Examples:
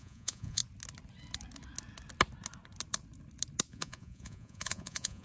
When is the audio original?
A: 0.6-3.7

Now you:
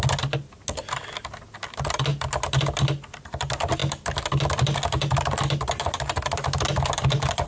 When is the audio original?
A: 0.0-7.5